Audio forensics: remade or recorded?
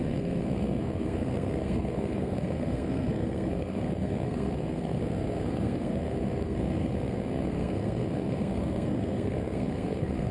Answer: remade